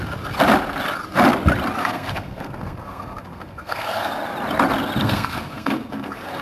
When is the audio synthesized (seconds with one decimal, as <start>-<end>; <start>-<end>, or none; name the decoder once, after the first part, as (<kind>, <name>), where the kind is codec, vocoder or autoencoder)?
1.8-4.1 (codec, SNAC); 5.0-6.4